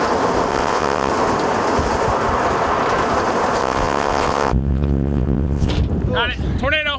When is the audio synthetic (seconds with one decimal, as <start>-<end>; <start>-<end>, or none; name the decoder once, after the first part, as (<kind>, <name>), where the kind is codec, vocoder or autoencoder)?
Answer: 0.5-1.1 (vocoder, WaveNeXt); 3.6-5.7